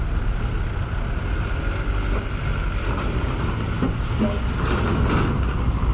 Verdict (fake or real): real